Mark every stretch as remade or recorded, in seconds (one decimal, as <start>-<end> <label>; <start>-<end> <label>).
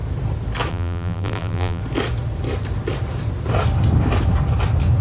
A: 0.0-0.7 recorded; 0.7-1.8 remade; 1.8-5.0 recorded